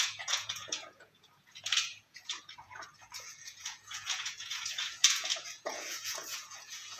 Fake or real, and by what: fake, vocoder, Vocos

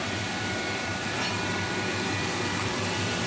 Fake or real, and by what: fake, vocoder, BigVGAN v2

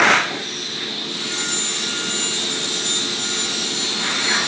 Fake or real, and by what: real